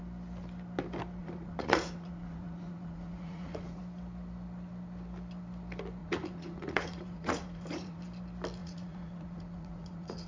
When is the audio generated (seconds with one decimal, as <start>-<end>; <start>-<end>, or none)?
1.2-3.8; 6.0-8.0; 8.6-10.3